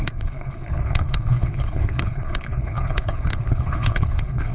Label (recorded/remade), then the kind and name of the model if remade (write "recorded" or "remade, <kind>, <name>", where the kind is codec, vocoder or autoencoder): remade, codec, HILCodec